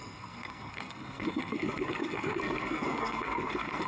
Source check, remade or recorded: remade